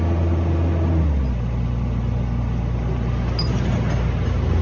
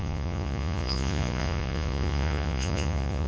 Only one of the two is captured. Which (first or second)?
first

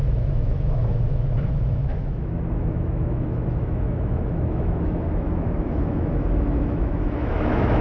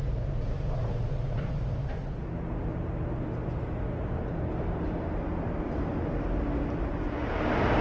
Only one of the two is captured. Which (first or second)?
second